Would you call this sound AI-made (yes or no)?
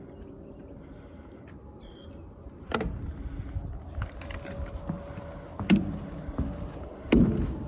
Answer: no